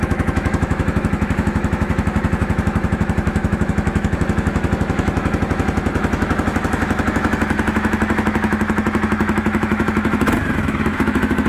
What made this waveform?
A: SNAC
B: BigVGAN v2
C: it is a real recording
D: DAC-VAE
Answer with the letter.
D